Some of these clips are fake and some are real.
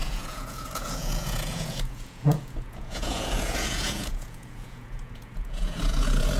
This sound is fake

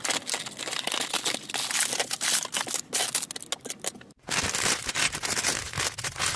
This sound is real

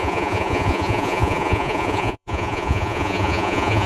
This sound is fake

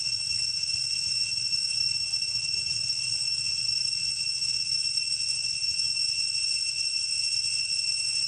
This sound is fake